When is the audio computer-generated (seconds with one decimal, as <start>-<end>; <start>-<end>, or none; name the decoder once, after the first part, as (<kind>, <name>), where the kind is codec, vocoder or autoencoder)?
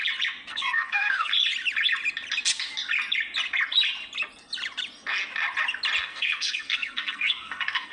0.5-1.3 (codec, SNAC); 6.0-7.9